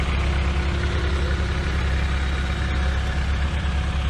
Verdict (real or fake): real